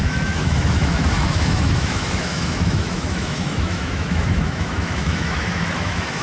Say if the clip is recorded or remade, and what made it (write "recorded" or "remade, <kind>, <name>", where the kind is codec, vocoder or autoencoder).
remade, autoencoder, DAC-VAE